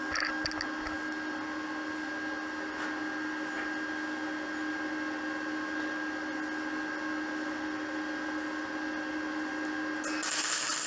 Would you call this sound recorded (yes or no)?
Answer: yes